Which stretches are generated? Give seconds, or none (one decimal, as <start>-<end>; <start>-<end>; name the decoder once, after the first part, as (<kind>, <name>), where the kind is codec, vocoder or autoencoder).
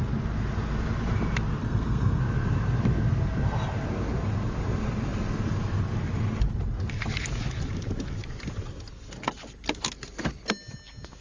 1.6-2.2 (codec, SNAC)